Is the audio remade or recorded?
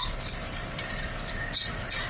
recorded